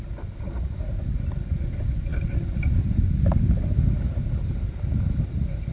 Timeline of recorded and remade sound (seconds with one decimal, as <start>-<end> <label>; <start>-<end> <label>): 0.0-5.7 recorded